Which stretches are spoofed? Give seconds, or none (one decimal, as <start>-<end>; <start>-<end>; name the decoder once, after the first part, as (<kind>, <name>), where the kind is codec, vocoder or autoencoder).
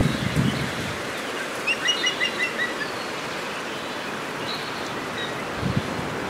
none